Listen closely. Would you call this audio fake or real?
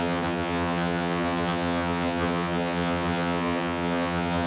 fake